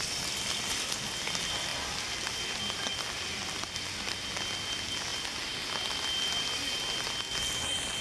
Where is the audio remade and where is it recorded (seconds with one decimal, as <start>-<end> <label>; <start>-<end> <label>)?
0.0-8.0 recorded